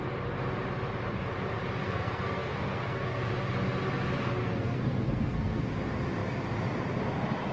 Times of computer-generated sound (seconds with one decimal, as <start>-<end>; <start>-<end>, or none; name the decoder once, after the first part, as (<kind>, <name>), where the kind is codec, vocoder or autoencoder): 1.8-3.3 (codec, SNAC); 4.4-5.6